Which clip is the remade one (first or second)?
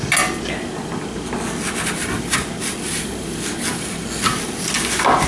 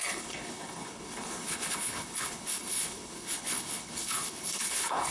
second